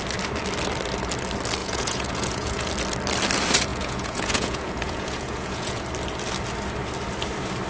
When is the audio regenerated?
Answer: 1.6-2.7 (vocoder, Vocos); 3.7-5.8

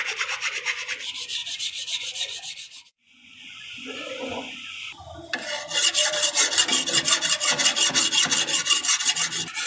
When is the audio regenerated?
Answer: 1.4-4.9 (vocoder, Vocos)

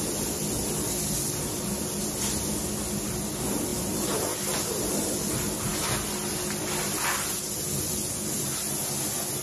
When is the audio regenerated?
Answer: none

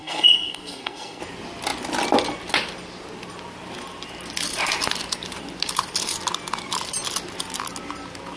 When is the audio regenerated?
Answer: 0.0-1.2 (codec, SNAC)

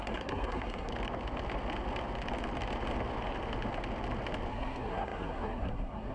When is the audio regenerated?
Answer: 0.0-0.9 (codec, SNAC); 4.5-6.1

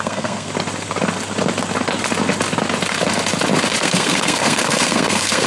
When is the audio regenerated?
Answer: 0.0-0.5 (codec, SNAC); 3.8-5.5

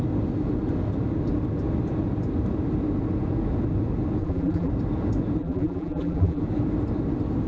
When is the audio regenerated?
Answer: 4.2-4.7 (vocoder, BigVGAN v2); 5.4-6.4